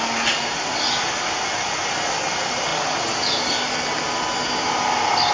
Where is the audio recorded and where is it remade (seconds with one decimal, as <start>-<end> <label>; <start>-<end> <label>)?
0.0-5.3 recorded